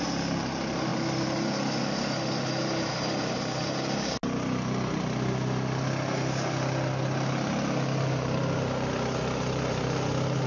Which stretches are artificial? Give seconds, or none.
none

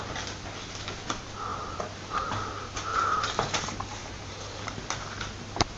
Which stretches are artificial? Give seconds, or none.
1.5-2.1 (vocoder, BigVGAN v2); 2.9-3.6; 4.0-4.8

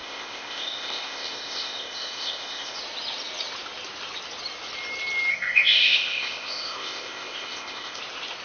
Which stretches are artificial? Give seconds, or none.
0.0-2.8 (codec, ZipCodec); 5.3-8.0

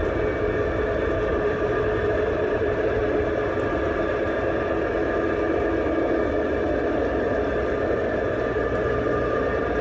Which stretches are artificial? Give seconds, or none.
1.3-3.0 (vocoder, BigVGAN v2)

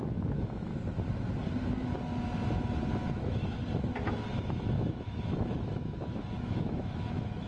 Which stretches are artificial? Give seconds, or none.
0.0-0.7 (autoencoder, DAC-VAE); 3.1-3.6; 4.3-7.5